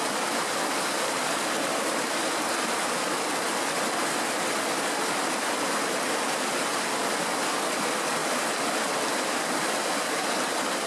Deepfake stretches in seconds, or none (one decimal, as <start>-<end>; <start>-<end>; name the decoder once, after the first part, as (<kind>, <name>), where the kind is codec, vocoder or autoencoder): none